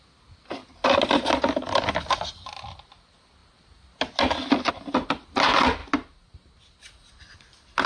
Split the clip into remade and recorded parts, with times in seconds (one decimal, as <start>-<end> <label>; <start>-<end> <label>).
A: 0.0-7.9 recorded

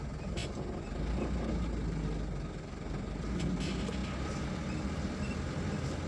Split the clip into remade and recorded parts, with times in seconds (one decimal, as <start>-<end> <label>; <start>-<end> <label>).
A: 0.0-6.1 recorded